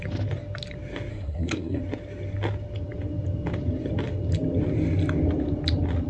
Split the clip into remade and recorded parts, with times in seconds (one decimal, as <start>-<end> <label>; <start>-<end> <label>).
0.0-1.1 recorded; 1.1-1.8 remade; 1.8-6.1 recorded